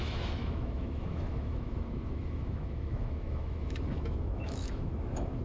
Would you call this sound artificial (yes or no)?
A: yes